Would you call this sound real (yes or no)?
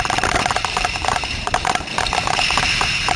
no